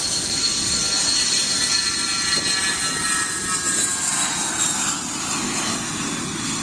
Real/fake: real